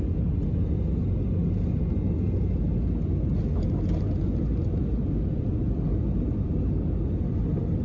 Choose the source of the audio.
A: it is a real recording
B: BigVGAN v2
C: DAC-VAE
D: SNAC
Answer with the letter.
A